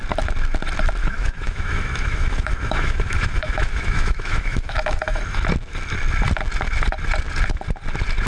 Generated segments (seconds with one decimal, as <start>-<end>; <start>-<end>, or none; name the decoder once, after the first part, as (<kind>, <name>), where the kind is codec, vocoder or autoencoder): 1.0-5.2 (autoencoder, DAC-VAE)